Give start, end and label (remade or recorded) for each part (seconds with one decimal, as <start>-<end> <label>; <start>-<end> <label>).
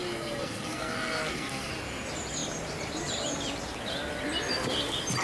0.0-1.7 remade; 1.7-5.2 recorded